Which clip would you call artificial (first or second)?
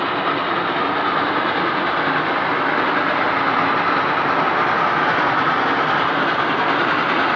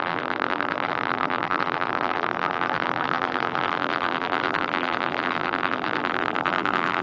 second